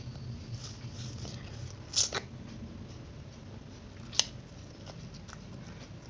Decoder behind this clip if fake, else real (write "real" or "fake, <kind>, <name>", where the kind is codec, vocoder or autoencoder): real